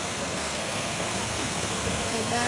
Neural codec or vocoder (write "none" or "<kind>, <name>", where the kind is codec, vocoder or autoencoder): codec, SNAC